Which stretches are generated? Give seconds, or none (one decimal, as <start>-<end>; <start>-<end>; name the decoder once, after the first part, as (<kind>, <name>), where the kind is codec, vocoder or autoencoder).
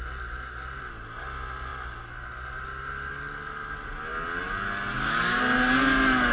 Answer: none